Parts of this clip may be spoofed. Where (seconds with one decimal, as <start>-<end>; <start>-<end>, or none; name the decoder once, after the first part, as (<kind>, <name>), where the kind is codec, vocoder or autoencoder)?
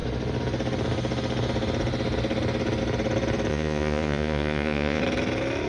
3.5-5.0 (vocoder, Vocos)